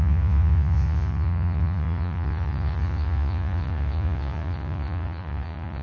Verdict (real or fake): fake